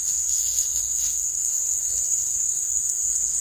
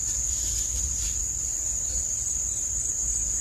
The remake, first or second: first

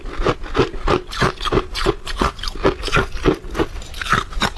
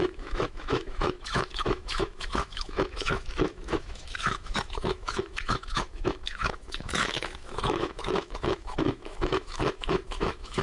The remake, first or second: second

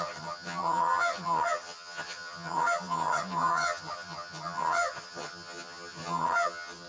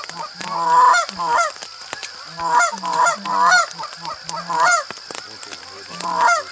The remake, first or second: first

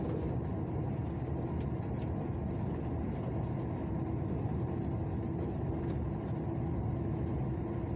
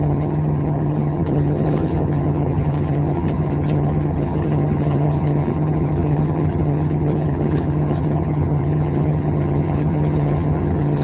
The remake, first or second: second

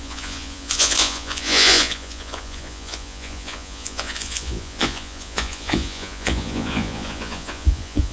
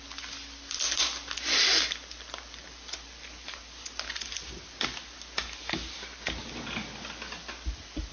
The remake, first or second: first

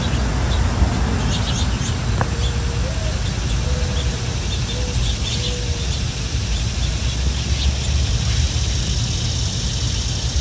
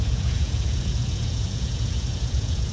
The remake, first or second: second